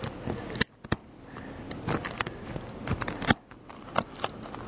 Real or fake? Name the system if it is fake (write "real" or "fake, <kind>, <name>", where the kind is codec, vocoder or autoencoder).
real